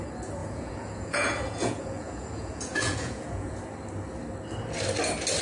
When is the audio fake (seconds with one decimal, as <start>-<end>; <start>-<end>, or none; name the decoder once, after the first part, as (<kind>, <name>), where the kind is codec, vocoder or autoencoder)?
0.4-3.6 (vocoder, Vocos)